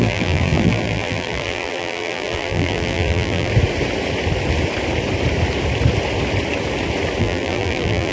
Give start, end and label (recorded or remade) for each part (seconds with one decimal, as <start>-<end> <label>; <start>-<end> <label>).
0.0-3.5 remade; 3.5-7.2 recorded; 7.2-8.1 remade